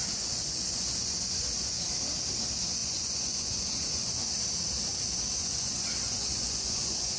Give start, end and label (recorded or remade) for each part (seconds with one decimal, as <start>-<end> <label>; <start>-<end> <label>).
0.0-1.8 remade; 1.8-2.8 recorded; 2.8-4.3 remade; 4.3-5.4 recorded; 5.4-7.2 remade